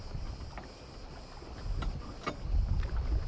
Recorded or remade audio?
recorded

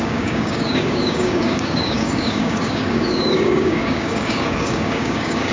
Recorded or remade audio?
remade